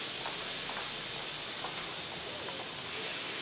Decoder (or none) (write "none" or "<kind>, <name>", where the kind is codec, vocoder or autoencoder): none